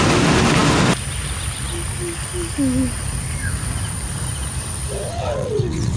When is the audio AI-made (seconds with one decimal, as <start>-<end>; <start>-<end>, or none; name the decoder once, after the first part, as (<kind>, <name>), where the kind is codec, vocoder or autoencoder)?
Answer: 5.1-6.0 (vocoder, WaveNeXt)